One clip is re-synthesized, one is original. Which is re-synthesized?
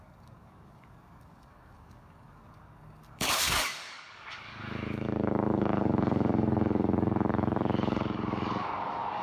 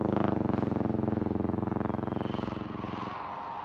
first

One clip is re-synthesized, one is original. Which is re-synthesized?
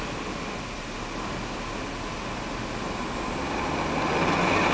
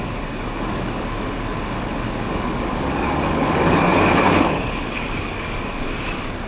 second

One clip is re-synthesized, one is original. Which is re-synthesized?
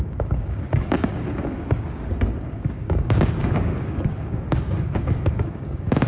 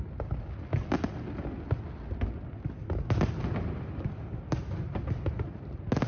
first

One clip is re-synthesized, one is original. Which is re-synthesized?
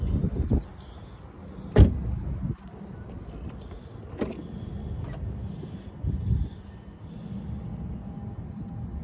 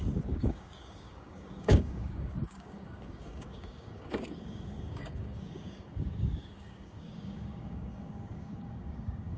second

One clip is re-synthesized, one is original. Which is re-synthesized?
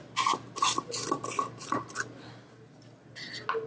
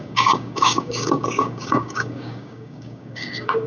second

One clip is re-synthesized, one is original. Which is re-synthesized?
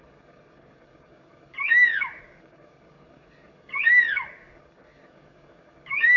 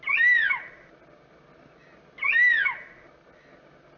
first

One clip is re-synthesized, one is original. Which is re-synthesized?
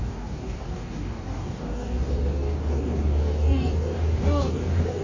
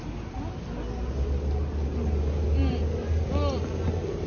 first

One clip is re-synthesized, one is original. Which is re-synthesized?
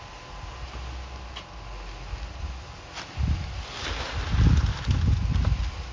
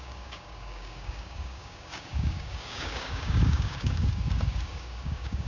second